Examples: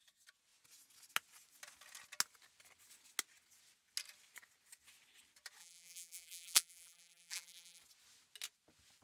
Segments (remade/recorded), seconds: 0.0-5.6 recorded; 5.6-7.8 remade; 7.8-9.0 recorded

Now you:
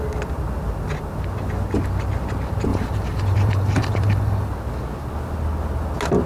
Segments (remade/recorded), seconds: 0.0-2.7 recorded; 2.7-4.5 remade; 4.5-6.3 recorded

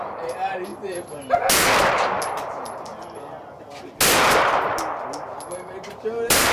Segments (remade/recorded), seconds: 0.0-0.7 remade; 0.7-1.8 recorded; 1.8-2.9 remade; 2.9-5.3 recorded; 5.3-6.5 remade

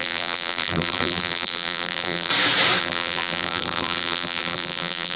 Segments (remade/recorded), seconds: 0.0-2.3 remade; 2.3-2.8 recorded; 2.8-5.2 remade

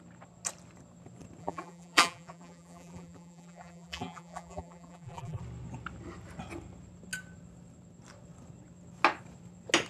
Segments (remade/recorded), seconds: 0.0-1.4 recorded; 1.4-5.4 remade; 5.4-9.9 recorded